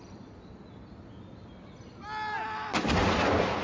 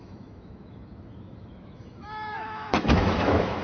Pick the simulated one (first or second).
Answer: second